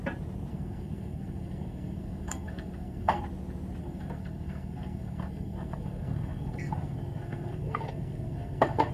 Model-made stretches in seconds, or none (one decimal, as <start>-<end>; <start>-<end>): 0.5-3.2; 3.8-8.9

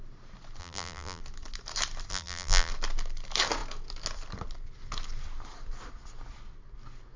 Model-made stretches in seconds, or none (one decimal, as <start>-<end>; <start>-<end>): 0.6-1.2; 2.1-2.7

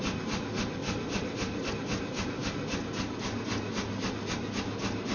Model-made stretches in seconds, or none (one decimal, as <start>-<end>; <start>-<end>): 0.8-1.7

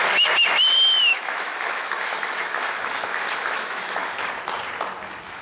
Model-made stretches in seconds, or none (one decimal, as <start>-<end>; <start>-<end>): 1.1-4.3

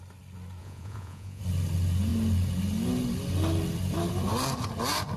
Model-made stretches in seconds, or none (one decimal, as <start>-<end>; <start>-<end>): 0.6-1.4

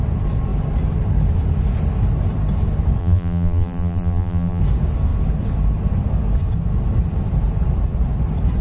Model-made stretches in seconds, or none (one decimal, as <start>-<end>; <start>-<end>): 3.0-4.6

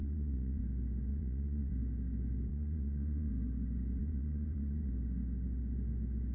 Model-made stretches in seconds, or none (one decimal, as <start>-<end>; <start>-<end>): 0.0-0.6; 1.1-1.7; 2.5-3.3; 4.0-4.9

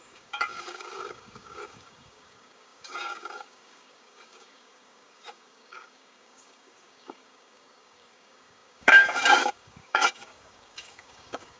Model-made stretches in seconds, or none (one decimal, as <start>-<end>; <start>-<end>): 0.0-11.6